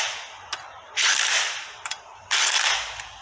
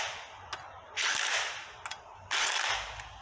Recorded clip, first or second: second